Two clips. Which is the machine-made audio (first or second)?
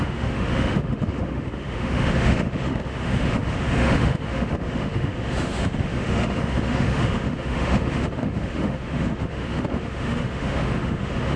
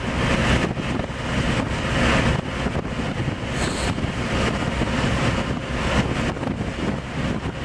first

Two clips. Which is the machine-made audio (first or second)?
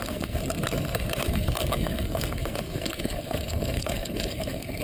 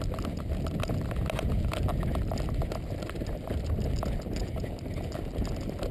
first